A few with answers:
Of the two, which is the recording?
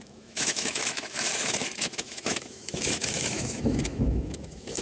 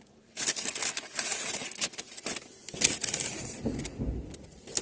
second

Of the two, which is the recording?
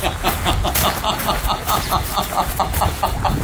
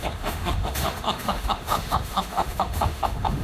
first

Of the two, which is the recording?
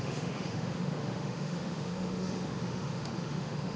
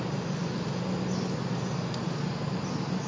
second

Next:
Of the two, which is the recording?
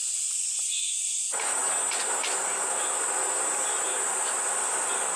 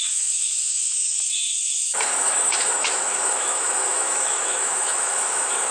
first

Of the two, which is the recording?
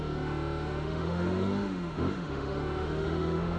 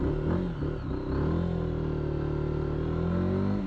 second